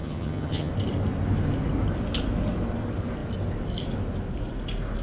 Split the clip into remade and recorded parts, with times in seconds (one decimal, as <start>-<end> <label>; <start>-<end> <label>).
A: 0.0-0.7 remade; 0.7-5.0 recorded